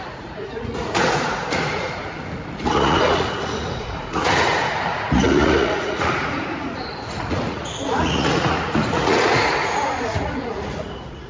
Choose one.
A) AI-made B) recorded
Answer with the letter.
A